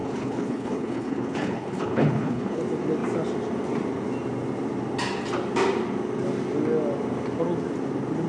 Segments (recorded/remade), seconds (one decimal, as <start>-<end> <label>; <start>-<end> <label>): 0.0-2.6 remade; 2.6-8.3 recorded